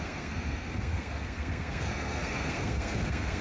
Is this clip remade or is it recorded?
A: remade